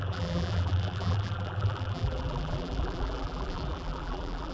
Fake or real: fake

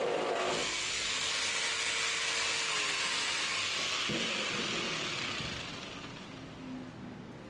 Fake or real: real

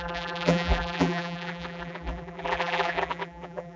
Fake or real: fake